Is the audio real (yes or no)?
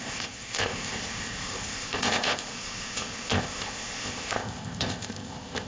no